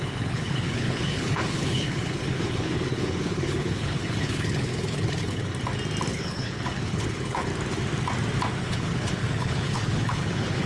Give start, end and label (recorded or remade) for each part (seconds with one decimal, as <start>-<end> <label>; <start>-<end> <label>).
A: 0.0-5.5 remade; 5.5-6.1 recorded; 6.1-7.5 remade; 7.5-8.6 recorded; 8.6-10.7 remade